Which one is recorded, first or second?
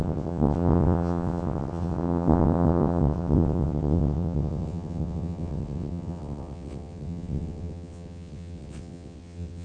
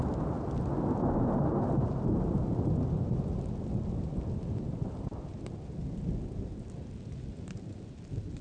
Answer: second